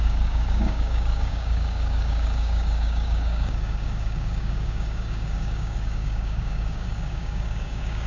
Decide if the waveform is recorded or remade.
remade